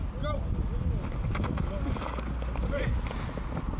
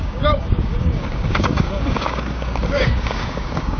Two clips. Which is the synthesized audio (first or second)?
second